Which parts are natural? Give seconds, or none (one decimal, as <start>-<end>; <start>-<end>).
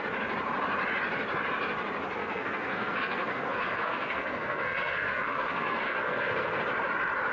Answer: 0.0-2.2; 6.6-7.3